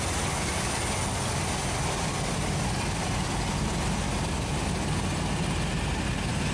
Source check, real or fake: real